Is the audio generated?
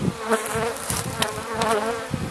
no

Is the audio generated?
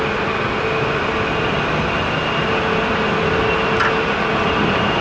no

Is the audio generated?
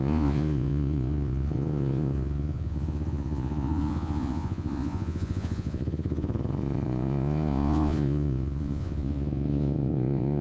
yes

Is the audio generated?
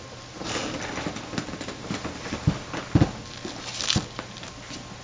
no